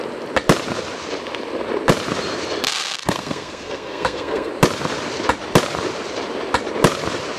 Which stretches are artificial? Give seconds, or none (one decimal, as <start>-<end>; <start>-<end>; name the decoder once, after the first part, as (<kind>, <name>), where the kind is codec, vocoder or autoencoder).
3.0-4.5 (codec, SNAC)